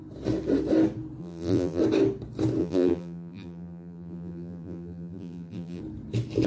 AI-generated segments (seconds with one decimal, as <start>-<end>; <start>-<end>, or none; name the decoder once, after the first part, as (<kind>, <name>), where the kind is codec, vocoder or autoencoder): 1.2-1.8 (vocoder, BigVGAN v2); 2.6-5.8